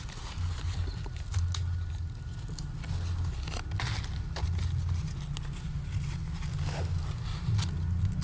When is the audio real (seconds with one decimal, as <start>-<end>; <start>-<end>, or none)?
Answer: 0.0-8.2